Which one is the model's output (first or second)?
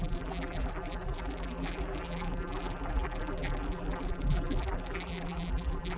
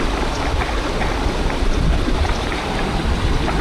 first